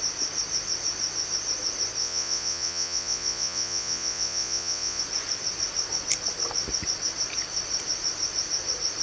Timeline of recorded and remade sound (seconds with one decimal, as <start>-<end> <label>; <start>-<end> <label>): 0.0-2.0 recorded; 2.0-5.0 remade; 5.0-9.0 recorded